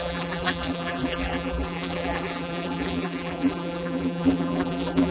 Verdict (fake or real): fake